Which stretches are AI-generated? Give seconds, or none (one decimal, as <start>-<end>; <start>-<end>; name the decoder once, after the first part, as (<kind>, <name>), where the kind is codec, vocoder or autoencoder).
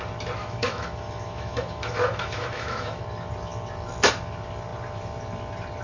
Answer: 0.4-3.0 (autoencoder, DAC-VAE)